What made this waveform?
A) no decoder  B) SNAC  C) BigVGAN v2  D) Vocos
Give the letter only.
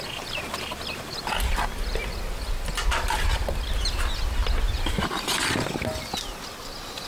A